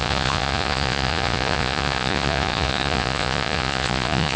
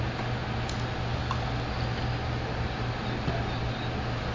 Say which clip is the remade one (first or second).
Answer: first